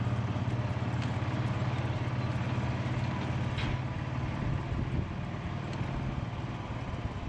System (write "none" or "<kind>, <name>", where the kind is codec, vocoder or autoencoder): none